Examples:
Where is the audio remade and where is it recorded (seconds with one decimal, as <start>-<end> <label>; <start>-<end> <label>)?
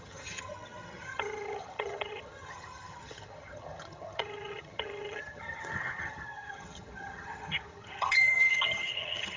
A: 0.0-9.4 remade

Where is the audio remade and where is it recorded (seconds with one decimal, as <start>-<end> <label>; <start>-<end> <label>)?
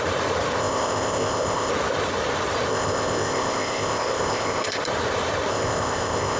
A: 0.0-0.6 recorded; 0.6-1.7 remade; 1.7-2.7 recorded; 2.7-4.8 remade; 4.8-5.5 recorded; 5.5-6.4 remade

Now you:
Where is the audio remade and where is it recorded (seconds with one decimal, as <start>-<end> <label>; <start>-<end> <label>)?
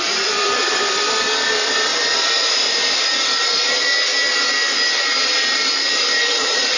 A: 0.0-0.6 remade; 0.6-1.5 recorded; 1.5-3.9 remade; 3.9-4.9 recorded; 4.9-6.8 remade